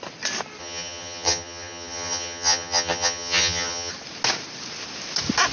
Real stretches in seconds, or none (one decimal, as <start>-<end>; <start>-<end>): 0.0-0.6; 3.9-5.5